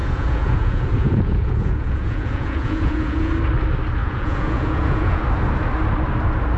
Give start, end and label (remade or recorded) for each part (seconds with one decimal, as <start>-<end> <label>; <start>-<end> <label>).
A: 0.0-3.3 remade; 3.3-4.0 recorded; 4.0-5.2 remade; 5.2-6.6 recorded